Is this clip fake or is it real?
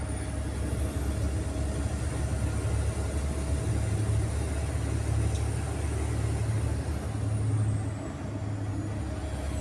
real